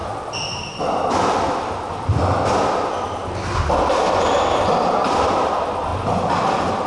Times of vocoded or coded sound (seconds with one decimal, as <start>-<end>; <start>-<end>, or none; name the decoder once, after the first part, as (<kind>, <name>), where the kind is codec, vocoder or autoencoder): none